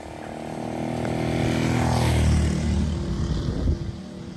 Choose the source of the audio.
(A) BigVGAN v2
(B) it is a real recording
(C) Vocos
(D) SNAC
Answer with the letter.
B